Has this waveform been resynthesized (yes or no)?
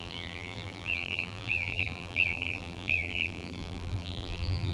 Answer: yes